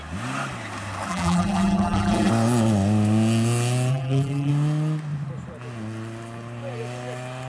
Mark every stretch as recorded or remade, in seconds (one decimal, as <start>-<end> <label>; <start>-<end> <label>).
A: 0.0-1.1 recorded; 1.1-2.3 remade; 2.3-3.9 recorded; 3.9-4.5 remade; 4.5-7.5 recorded